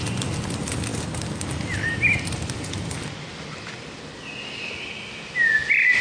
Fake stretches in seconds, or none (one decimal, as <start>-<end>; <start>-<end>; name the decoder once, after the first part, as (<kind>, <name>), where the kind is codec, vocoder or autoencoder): none